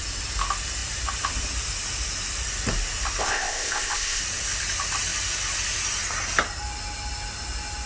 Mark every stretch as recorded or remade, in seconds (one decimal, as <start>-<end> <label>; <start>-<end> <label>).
0.0-3.2 recorded; 3.2-4.2 remade; 4.2-7.9 recorded